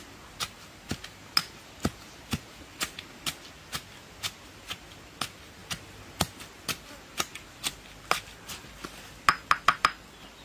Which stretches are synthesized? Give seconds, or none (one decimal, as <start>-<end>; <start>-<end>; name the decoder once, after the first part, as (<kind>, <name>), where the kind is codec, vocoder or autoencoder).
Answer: none